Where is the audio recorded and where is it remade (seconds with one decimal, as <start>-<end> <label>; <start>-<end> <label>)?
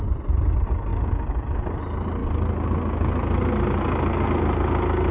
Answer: 0.0-5.1 recorded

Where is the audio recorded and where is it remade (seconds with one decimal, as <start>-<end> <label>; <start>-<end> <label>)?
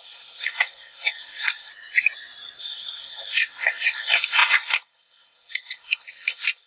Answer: 0.0-1.7 remade; 1.7-2.6 recorded; 2.6-6.7 remade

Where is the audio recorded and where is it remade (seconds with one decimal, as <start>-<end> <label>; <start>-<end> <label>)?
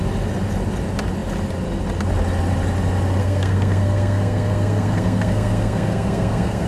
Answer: 0.0-3.2 recorded; 3.2-6.7 remade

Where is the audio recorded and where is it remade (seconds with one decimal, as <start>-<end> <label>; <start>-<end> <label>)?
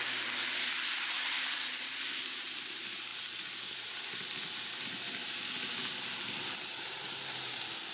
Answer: 0.0-7.9 recorded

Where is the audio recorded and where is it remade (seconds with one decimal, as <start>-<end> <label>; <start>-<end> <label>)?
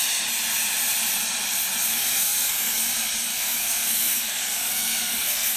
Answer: 0.0-1.9 recorded; 1.9-2.8 remade; 2.8-3.3 recorded; 3.3-5.6 remade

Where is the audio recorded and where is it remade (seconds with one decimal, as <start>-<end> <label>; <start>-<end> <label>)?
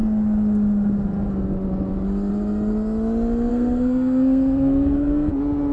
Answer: 0.0-3.5 recorded; 3.5-5.3 remade; 5.3-5.7 recorded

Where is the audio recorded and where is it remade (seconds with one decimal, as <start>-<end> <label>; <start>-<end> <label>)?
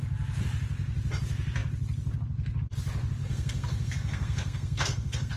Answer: 0.0-3.2 recorded; 3.2-5.4 remade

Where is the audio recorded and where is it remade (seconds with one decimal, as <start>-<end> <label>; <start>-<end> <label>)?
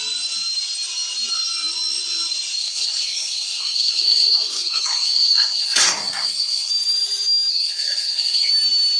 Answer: 0.0-2.6 recorded; 2.6-6.7 remade; 6.7-7.5 recorded; 7.5-8.5 remade; 8.5-9.0 recorded